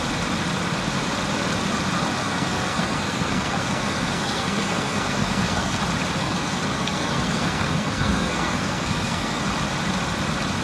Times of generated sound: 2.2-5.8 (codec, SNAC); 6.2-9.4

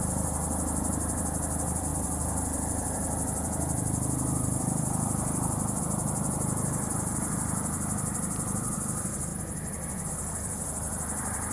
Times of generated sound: 0.0-9.3 (vocoder, BigVGAN v2); 10.1-11.5

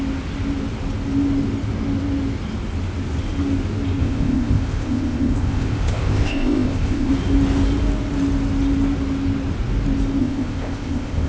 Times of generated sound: 4.0-7.1 (codec, ZipCodec); 10.2-11.3